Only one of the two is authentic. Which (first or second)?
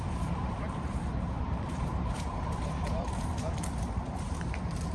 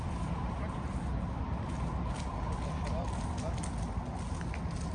second